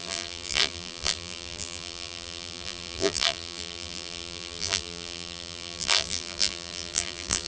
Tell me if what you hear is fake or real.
fake